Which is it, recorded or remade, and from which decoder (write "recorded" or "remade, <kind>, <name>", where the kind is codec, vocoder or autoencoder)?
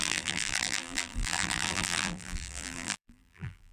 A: remade, vocoder, BigVGAN v2